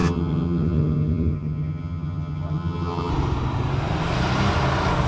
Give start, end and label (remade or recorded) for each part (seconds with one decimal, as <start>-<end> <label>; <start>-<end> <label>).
0.0-3.1 remade; 3.1-5.1 recorded